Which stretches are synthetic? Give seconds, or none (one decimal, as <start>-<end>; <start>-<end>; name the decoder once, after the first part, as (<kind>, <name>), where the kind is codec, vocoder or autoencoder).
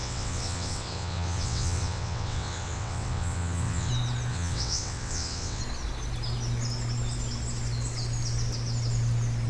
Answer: 0.0-3.9 (vocoder, WaveNeXt); 4.3-5.6